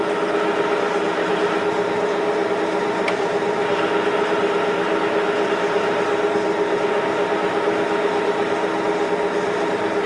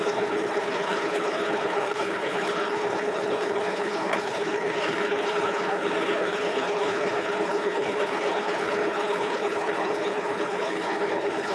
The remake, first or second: second